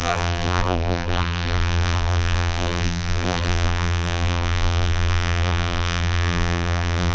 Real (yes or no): no